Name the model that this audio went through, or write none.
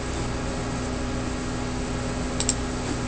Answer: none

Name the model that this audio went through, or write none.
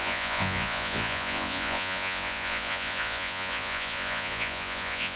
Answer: vocoder, Vocos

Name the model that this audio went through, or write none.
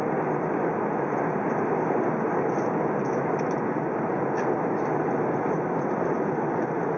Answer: none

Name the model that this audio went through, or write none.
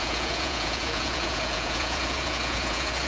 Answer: vocoder, Vocos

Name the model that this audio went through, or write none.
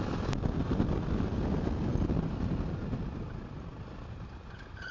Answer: none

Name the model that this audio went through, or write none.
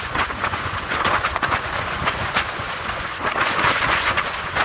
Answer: vocoder, Vocos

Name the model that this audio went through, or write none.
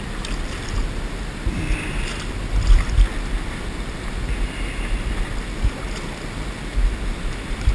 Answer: none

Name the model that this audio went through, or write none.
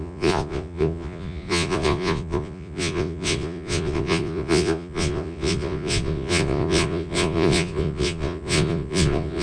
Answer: vocoder, Vocos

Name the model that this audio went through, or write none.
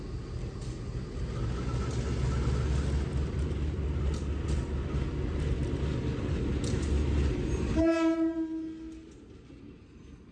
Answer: none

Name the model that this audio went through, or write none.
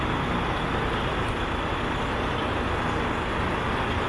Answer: none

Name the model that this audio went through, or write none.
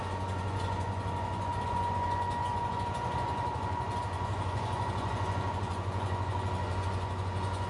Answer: vocoder, Vocos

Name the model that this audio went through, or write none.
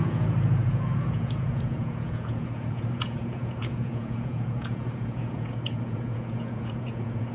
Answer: vocoder, Vocos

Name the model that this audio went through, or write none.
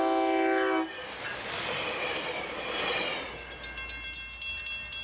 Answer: none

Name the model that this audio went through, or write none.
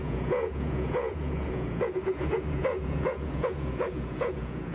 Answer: vocoder, Vocos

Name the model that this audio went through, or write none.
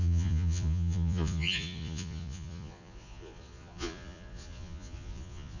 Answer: vocoder, Vocos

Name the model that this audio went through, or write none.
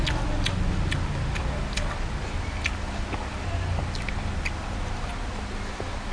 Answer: none